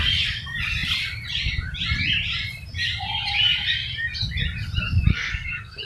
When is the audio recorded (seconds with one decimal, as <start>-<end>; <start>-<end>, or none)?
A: 0.0-5.1